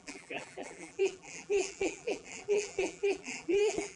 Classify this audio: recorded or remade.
remade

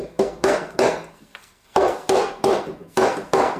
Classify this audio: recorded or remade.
remade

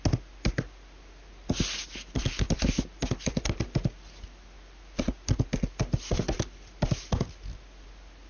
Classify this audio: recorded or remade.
recorded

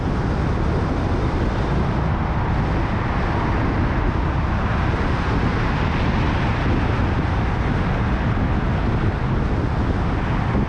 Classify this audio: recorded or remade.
recorded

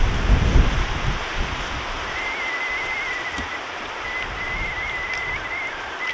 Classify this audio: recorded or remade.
recorded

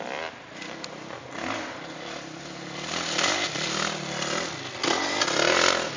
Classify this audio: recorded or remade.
recorded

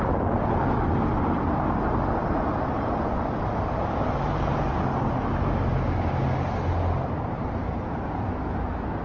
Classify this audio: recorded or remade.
recorded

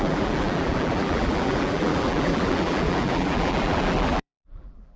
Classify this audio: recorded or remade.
remade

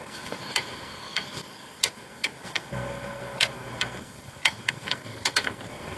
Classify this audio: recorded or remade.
remade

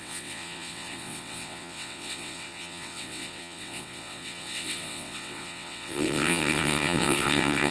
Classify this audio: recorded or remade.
remade